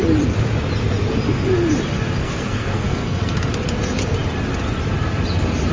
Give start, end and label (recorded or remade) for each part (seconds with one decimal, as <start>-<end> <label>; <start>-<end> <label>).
0.0-2.2 recorded; 2.2-3.5 remade; 3.5-5.7 recorded